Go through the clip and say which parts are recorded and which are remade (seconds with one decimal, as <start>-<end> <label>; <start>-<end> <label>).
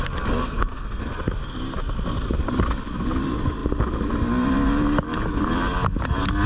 0.0-0.4 recorded; 0.4-1.0 remade; 1.0-6.5 recorded